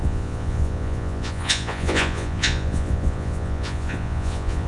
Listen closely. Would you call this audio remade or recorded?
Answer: remade